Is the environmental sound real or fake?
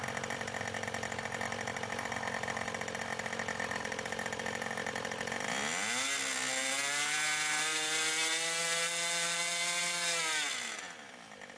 real